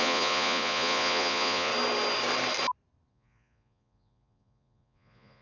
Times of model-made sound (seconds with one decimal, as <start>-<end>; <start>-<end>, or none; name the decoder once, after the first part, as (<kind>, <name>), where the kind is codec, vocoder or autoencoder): 0.0-1.7 (vocoder, Vocos); 3.1-5.4